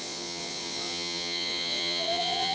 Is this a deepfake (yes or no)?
yes